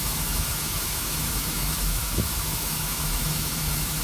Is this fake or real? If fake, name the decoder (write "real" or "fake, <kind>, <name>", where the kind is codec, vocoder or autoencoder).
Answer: fake, autoencoder, DAC-VAE